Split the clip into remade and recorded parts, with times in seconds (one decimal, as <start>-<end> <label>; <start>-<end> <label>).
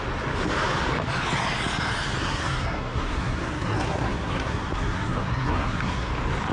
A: 0.0-2.2 recorded; 2.2-6.1 remade; 6.1-6.5 recorded